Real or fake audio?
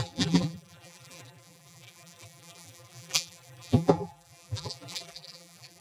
fake